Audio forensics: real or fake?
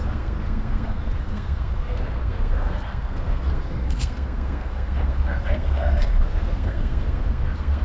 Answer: fake